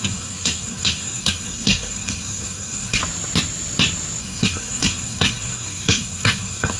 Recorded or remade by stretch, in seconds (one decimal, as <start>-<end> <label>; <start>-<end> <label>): 0.0-3.0 remade; 3.0-4.2 recorded; 4.2-6.8 remade